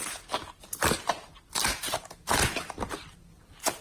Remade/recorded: recorded